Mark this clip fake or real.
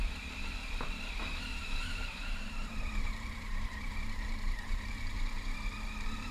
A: fake